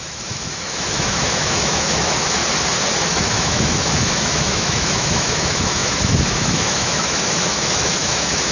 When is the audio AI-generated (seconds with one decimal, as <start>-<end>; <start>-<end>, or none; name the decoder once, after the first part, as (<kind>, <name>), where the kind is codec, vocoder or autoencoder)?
0.0-2.4 (autoencoder, DAC-VAE); 3.1-8.5